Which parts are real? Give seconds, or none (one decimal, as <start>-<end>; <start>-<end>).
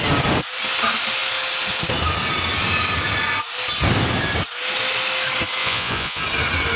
0.0-5.6; 6.2-6.8